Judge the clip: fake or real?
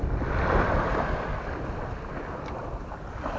real